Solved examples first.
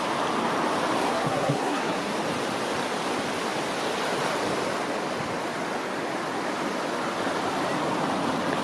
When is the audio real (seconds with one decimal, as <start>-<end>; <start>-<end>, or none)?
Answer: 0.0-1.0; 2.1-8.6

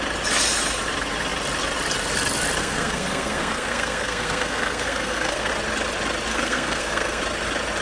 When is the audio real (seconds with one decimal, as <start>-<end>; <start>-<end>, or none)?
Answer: 0.0-2.6; 5.5-6.3; 7.2-7.8

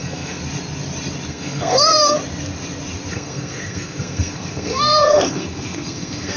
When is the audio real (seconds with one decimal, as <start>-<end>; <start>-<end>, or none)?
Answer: 0.4-1.3; 2.2-3.1

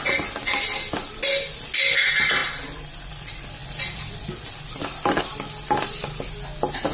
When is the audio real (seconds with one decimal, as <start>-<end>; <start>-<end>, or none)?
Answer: 0.0-6.9